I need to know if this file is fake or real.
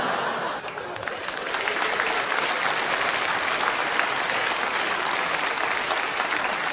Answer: real